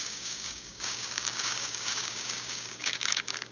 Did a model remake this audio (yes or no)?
yes